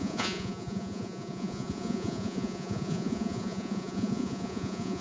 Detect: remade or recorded remade